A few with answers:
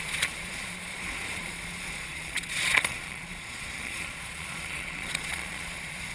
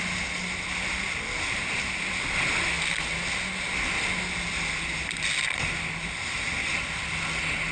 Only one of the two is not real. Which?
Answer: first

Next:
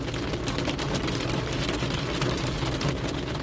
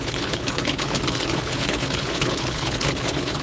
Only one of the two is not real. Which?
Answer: second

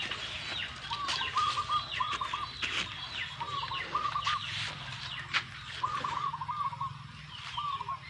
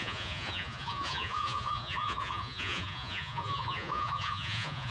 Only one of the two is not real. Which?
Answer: second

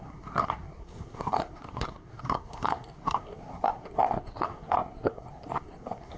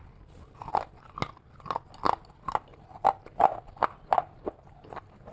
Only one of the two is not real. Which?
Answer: first